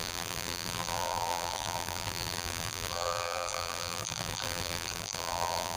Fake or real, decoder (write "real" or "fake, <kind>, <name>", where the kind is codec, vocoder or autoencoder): fake, vocoder, BigVGAN v2